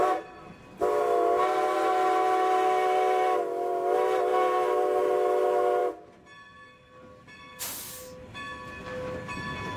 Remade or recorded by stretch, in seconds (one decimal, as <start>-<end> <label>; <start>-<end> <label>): 0.0-9.8 recorded